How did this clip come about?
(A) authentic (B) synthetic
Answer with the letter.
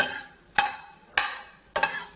A